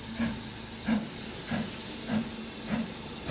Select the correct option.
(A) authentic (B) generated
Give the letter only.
A